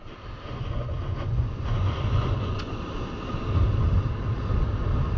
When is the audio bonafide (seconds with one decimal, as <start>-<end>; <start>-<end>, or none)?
0.0-0.5; 2.7-5.2